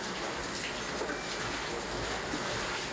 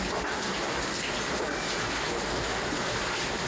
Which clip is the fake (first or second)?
second